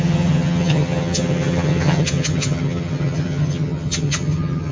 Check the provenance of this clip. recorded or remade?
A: remade